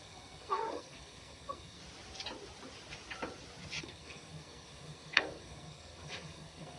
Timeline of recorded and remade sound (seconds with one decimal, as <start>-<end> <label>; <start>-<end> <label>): 0.0-1.8 remade; 1.8-3.8 recorded; 3.8-6.8 remade